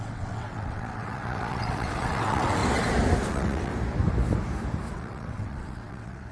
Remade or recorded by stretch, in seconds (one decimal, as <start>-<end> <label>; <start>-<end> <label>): 0.0-2.6 remade; 2.6-3.3 recorded; 3.3-3.7 remade; 3.7-4.9 recorded; 4.9-6.3 remade